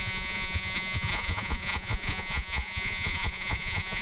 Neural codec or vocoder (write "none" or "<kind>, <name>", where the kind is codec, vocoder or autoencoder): vocoder, Vocos